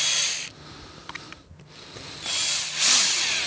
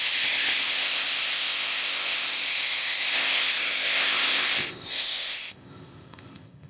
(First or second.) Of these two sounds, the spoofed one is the second